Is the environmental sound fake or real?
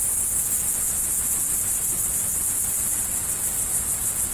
real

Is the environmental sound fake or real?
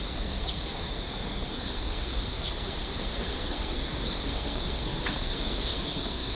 fake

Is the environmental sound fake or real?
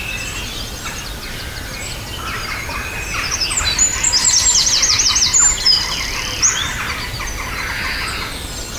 real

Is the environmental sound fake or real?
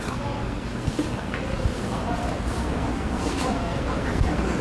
fake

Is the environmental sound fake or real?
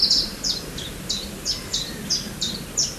real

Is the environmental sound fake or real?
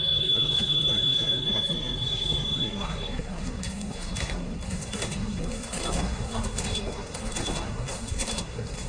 fake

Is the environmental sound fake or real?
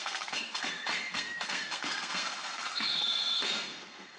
fake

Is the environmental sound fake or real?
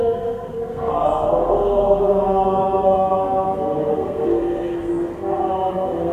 fake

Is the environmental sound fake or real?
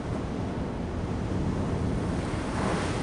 real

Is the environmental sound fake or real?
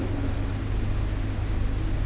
real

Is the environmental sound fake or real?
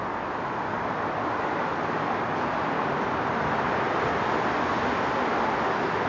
real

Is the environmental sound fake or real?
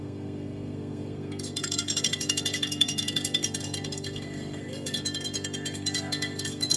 fake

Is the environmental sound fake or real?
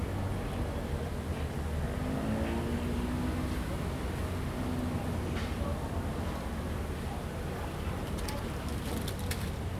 real